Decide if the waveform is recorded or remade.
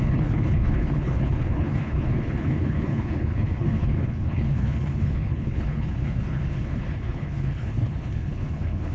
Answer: remade